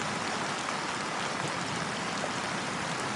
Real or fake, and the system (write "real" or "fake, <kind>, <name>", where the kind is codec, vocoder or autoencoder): real